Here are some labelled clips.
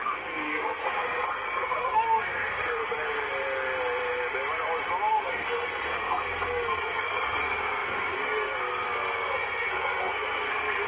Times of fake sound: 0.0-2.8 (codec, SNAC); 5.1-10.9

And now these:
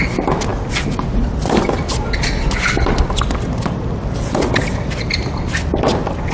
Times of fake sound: none